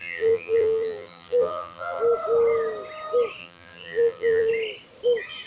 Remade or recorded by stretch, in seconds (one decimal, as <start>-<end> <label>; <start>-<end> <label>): 0.0-2.0 remade; 2.0-3.4 recorded; 3.4-4.5 remade; 4.5-5.5 recorded